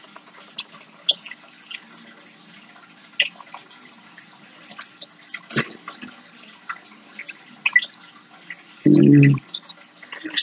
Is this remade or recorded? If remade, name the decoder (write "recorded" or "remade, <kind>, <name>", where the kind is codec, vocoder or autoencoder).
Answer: recorded